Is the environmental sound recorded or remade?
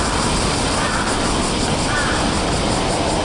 recorded